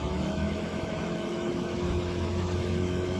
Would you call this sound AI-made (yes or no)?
yes